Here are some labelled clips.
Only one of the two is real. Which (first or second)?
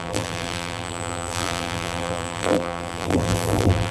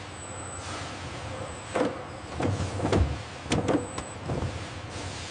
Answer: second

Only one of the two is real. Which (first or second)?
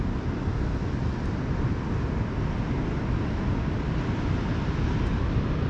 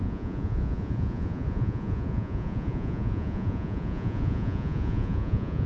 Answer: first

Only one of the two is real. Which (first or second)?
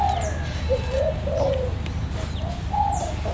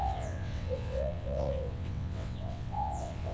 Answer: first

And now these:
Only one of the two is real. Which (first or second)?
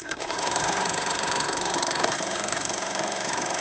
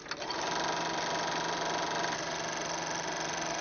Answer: second